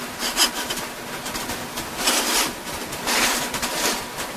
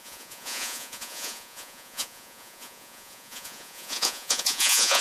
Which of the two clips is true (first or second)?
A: first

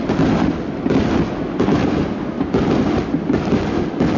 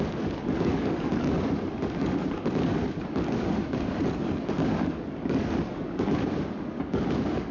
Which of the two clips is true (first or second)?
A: first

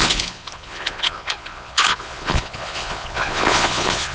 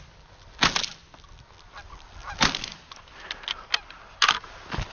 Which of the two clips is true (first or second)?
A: second